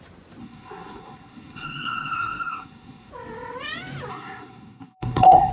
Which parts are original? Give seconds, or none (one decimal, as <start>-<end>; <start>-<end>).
0.0-0.4; 3.1-4.1